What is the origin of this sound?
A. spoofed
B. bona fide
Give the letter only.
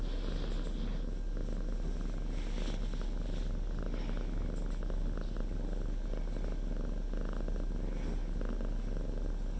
B